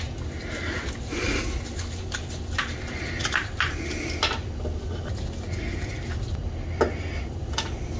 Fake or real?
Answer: real